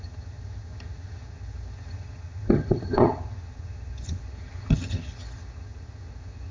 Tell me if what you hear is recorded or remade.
remade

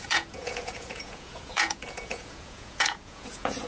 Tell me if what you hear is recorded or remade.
remade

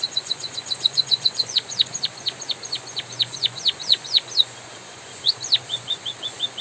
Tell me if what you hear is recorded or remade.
remade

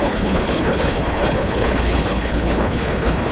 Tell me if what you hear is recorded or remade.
remade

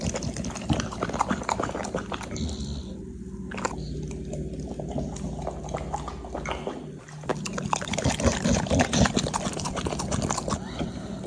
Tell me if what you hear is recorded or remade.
recorded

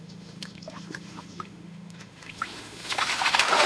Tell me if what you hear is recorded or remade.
remade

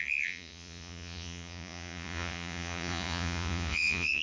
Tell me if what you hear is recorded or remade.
remade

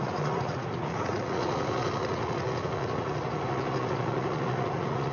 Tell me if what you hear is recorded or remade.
remade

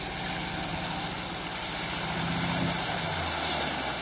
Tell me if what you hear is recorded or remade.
recorded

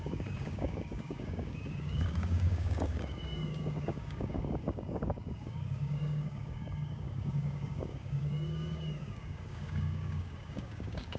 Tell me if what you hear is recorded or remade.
remade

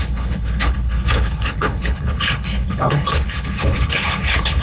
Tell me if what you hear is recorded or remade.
remade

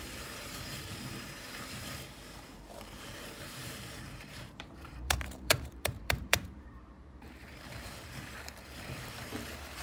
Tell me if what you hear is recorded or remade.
remade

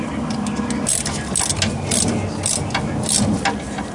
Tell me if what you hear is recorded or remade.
recorded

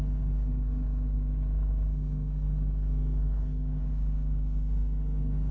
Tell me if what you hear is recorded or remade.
remade